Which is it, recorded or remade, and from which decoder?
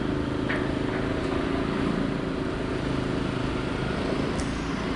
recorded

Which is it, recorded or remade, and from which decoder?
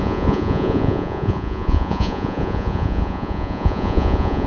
remade, vocoder, Vocos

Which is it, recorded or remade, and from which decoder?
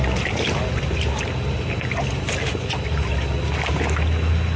recorded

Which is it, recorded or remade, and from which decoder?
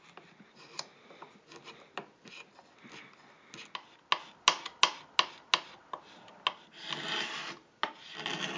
recorded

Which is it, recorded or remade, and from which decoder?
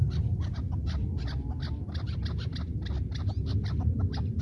recorded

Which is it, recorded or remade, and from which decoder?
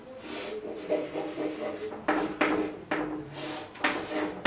recorded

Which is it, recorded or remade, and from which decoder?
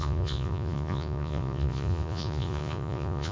remade, vocoder, Vocos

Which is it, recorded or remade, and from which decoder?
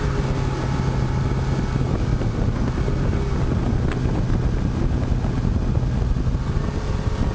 recorded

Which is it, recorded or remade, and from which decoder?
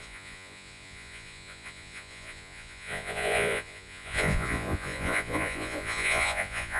remade, vocoder, Vocos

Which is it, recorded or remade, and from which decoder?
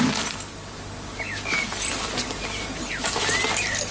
recorded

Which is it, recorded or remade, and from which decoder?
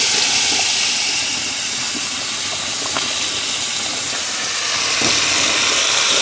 recorded